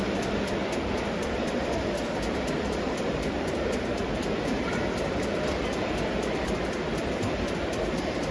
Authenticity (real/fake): fake